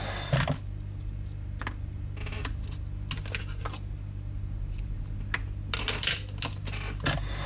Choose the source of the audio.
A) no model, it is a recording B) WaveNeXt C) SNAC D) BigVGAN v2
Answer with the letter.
A